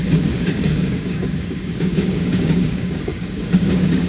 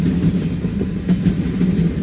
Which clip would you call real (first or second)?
second